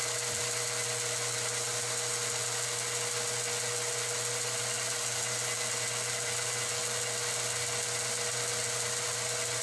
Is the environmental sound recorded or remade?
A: recorded